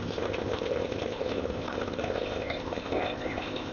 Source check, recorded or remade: remade